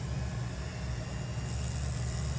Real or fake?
real